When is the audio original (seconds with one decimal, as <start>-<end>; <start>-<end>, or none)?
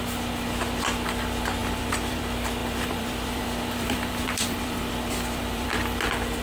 0.0-1.6; 2.2-2.6; 5.7-6.4